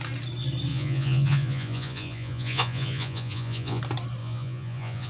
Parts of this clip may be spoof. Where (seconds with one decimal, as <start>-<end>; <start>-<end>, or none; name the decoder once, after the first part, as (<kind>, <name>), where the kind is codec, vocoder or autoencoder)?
0.7-3.8 (vocoder, Vocos); 4.2-5.1